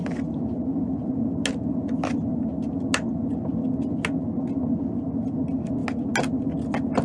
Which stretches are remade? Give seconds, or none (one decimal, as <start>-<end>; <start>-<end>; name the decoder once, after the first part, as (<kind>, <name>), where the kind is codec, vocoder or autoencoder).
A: none